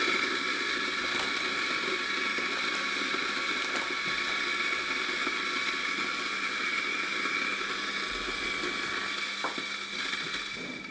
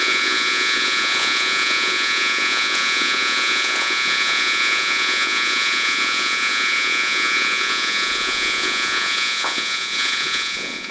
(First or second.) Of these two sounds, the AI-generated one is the second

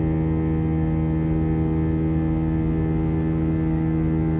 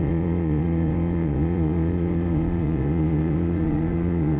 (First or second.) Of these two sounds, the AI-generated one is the second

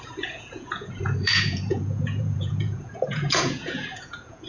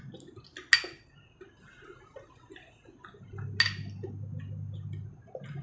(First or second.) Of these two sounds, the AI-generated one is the first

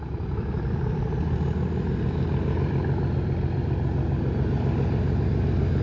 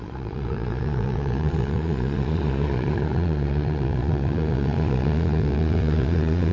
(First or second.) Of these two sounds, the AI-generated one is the second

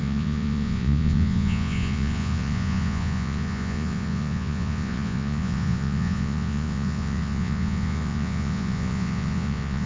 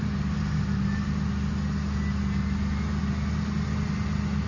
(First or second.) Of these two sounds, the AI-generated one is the first